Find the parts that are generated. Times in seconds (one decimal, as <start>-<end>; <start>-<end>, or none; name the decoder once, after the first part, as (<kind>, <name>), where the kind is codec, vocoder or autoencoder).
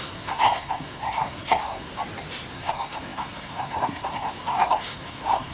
0.0-1.9 (codec, SNAC); 2.5-5.5